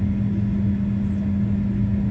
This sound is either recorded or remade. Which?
recorded